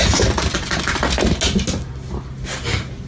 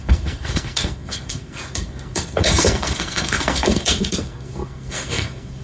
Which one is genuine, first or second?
first